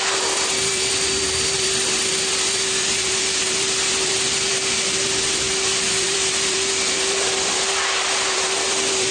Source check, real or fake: fake